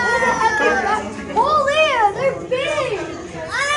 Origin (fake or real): real